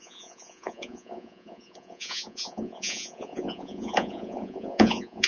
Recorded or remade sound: remade